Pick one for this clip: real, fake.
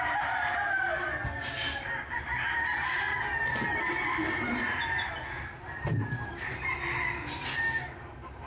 real